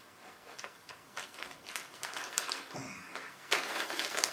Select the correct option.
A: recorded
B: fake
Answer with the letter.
B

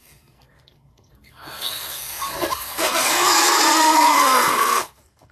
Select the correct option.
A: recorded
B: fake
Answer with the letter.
B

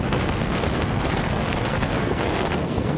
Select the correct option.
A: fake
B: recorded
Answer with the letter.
A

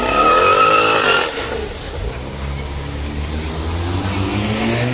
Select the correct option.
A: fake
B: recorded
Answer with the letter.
B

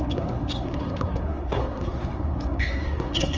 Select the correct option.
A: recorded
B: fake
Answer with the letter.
B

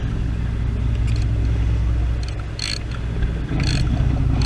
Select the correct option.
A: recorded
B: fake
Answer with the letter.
A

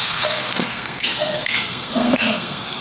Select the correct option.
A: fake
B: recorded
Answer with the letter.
A